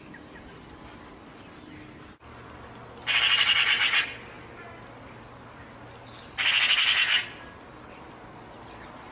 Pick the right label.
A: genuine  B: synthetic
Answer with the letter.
A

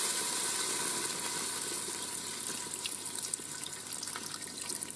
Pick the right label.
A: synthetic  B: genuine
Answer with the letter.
B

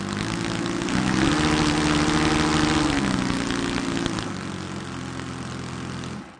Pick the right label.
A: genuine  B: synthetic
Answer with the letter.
A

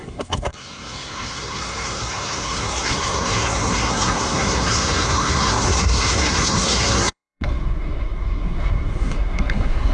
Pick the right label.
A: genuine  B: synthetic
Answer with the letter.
B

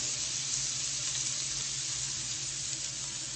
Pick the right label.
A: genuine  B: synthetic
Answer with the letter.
A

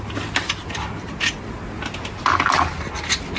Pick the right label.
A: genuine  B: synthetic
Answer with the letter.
A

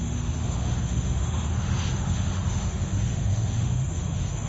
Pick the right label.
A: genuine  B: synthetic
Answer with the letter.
B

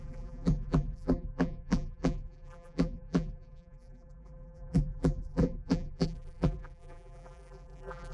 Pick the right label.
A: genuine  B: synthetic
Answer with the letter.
B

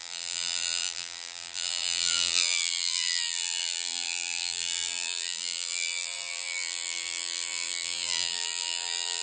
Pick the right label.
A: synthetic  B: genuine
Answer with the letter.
A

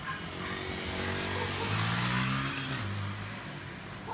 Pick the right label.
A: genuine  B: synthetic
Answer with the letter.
A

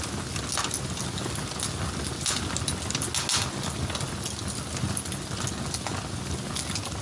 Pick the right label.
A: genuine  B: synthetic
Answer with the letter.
A